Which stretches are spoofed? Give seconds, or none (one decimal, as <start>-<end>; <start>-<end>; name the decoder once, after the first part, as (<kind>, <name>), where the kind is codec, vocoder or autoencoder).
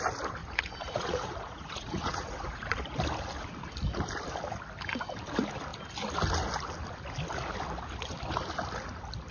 0.4-2.7 (vocoder, Vocos)